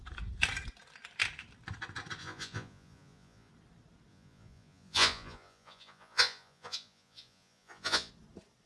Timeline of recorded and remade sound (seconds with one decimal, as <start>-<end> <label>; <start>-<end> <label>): 0.0-2.2 recorded; 2.2-3.5 remade; 3.5-4.1 recorded; 4.1-8.1 remade; 8.1-8.7 recorded